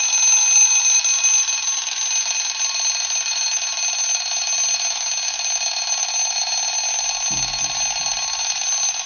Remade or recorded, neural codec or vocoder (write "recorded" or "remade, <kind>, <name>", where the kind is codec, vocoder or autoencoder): recorded